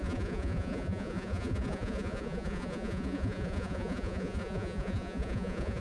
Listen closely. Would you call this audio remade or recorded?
remade